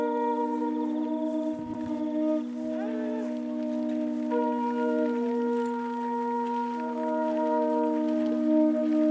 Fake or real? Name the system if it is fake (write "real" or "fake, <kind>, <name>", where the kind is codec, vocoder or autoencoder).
real